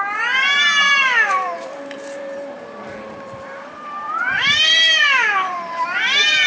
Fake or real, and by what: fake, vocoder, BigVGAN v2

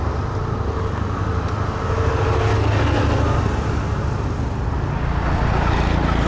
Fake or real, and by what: real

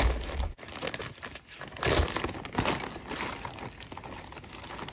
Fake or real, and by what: real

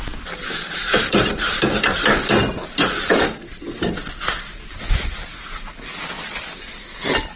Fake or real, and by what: fake, vocoder, BigVGAN v2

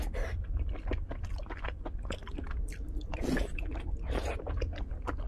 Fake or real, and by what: real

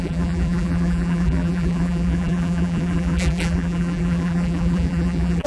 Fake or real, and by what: fake, vocoder, BigVGAN v2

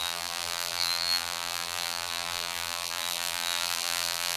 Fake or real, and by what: fake, vocoder, BigVGAN v2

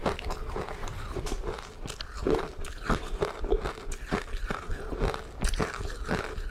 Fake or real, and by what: real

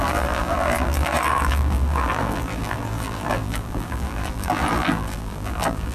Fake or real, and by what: fake, vocoder, BigVGAN v2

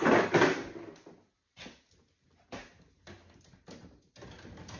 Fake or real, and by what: real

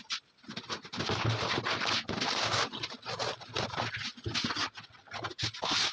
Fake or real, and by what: real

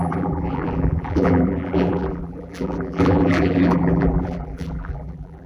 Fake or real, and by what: fake, vocoder, BigVGAN v2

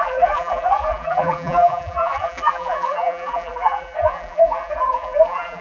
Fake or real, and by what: fake, vocoder, BigVGAN v2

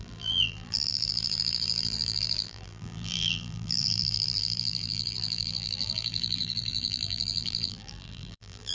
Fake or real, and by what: fake, vocoder, BigVGAN v2